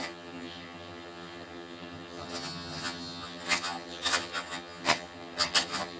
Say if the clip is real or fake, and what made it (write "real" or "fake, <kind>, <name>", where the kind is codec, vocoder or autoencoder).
fake, vocoder, HiFi-GAN